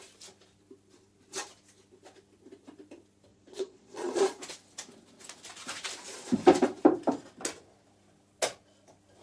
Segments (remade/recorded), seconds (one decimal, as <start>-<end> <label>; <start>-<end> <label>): 0.0-3.3 recorded; 3.3-4.4 remade; 4.4-9.2 recorded